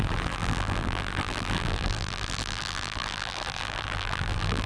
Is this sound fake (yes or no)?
yes